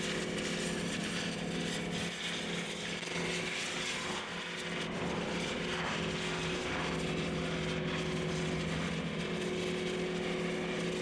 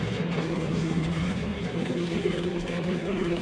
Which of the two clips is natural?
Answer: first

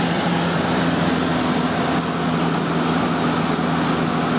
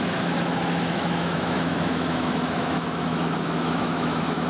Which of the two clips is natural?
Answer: first